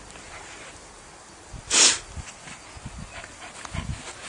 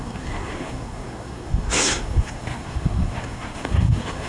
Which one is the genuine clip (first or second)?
first